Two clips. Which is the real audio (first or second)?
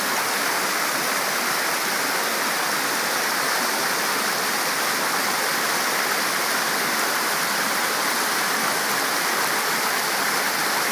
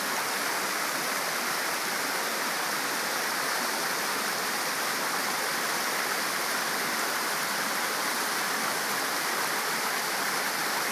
first